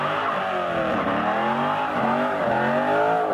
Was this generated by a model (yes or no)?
no